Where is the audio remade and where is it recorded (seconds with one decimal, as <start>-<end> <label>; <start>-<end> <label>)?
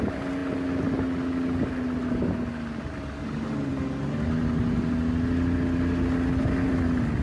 0.0-7.2 recorded